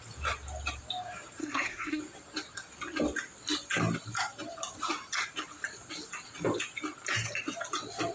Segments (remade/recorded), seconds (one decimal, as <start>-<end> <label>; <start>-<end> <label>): 0.0-1.4 recorded; 1.4-2.0 remade; 2.0-8.1 recorded